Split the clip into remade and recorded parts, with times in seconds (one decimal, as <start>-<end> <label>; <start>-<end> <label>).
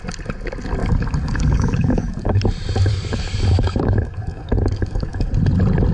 0.0-0.8 recorded; 0.8-2.4 remade; 2.4-2.9 recorded; 2.9-5.3 remade; 5.3-5.9 recorded